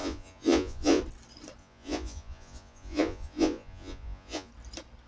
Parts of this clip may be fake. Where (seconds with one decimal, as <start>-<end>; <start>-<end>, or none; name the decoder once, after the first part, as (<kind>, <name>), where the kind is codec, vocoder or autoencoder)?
0.0-1.0 (vocoder, Vocos); 1.6-4.5